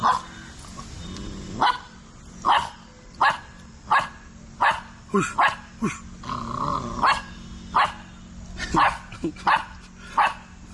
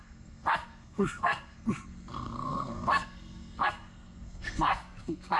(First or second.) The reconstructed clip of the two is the second